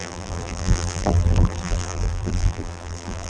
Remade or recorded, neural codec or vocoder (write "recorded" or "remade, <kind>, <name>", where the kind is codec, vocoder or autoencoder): remade, vocoder, BigVGAN v2